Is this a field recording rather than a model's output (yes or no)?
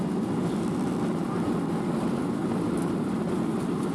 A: yes